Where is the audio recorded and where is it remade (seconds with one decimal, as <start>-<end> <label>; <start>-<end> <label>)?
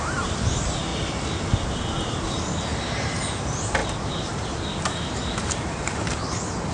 0.0-0.9 remade; 0.9-1.7 recorded; 1.7-6.7 remade